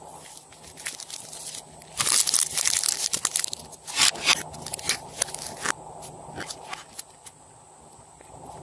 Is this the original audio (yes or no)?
yes